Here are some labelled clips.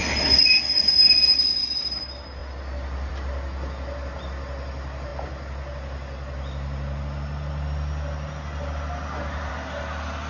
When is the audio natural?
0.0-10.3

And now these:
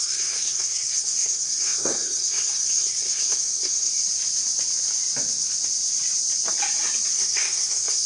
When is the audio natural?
3.9-7.1

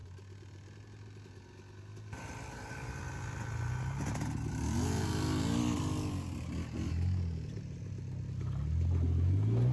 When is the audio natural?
0.0-9.7